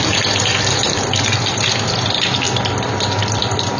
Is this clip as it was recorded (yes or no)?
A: yes